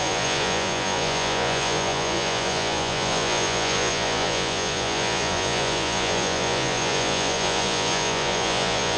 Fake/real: fake